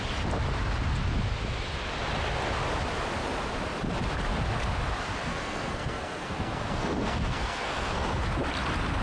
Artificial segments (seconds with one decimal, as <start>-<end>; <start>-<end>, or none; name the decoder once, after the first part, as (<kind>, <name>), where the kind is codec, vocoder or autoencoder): 5.3-8.2 (codec, SNAC)

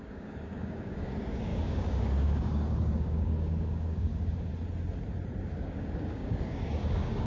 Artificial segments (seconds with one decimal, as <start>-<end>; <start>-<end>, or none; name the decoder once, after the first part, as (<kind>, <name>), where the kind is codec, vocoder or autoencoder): 0.0-4.5 (codec, DAC); 5.4-7.3